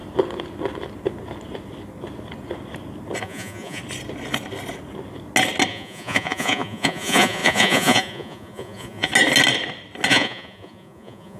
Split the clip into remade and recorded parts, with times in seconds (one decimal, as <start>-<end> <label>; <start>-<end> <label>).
0.0-3.2 recorded; 3.2-3.8 remade; 3.8-5.7 recorded; 5.7-9.1 remade; 9.1-10.1 recorded; 10.1-11.4 remade